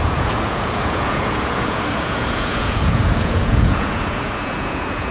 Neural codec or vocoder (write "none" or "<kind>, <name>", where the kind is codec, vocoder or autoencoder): vocoder, Vocos